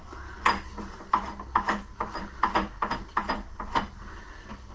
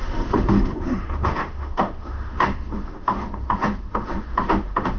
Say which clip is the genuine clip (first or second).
first